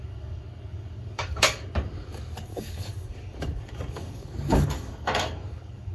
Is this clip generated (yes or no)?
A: yes